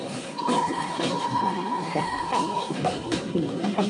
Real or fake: fake